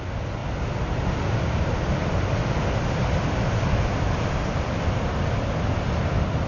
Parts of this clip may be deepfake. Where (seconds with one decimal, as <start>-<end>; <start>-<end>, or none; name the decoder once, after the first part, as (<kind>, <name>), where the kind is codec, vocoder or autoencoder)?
none

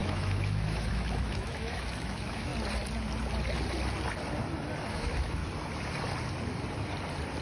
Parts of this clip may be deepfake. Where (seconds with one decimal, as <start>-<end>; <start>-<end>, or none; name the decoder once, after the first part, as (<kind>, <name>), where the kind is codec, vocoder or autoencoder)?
0.0-2.5 (autoencoder, DAC-VAE); 4.9-5.4

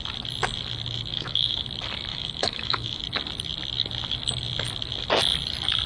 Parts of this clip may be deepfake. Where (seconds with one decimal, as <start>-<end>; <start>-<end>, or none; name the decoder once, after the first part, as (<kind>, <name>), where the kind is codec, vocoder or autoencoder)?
1.1-1.7 (autoencoder, DAC-VAE); 2.1-3.0

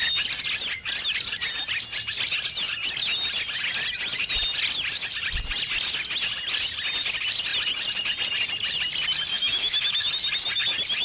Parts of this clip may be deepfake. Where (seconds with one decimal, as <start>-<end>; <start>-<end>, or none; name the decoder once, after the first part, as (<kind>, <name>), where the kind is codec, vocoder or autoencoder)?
9.3-10.1 (autoencoder, DAC-VAE)

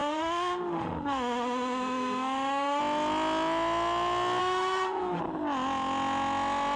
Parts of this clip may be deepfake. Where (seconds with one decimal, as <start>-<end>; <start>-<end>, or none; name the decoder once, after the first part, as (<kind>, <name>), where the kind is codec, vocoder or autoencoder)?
0.0-2.8 (autoencoder, DAC-VAE); 4.4-5.2